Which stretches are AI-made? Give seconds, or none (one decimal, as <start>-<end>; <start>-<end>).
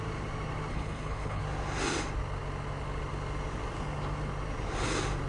0.7-1.4